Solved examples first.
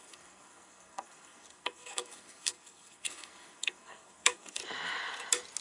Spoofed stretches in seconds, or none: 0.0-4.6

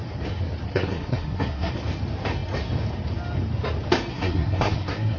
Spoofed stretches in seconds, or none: 0.7-1.7; 4.1-5.2

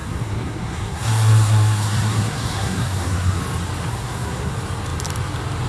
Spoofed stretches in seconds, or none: 0.0-3.4; 3.9-4.5

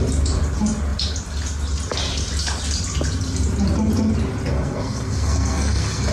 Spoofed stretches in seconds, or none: 4.5-6.1